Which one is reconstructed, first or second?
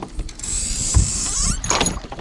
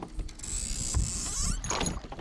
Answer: first